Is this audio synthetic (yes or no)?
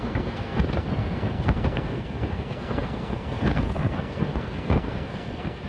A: yes